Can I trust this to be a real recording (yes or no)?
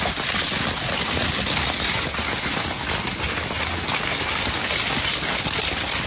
yes